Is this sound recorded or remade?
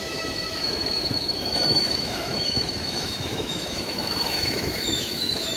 remade